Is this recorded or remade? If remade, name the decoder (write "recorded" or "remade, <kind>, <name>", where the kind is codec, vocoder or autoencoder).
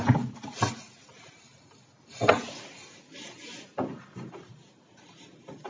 recorded